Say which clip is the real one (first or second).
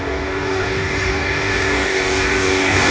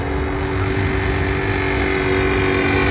second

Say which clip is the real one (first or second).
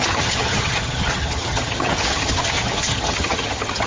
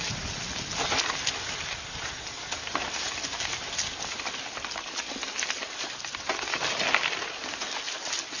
second